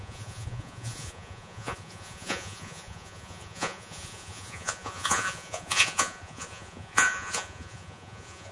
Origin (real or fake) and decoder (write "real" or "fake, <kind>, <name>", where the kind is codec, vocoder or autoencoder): fake, vocoder, Vocos